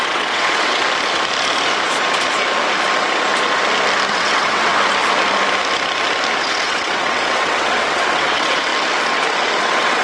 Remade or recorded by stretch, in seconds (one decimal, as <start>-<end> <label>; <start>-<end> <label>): 0.0-0.8 remade; 0.8-4.1 recorded; 4.1-4.7 remade; 4.7-6.4 recorded; 6.4-8.7 remade; 8.7-9.6 recorded; 9.6-10.0 remade